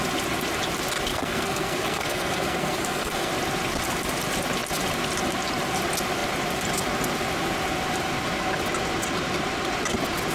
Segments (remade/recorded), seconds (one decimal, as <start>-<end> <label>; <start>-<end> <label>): 0.0-1.1 recorded; 1.1-3.3 remade; 3.3-10.3 recorded